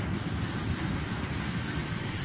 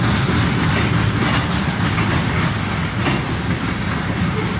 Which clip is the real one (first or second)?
second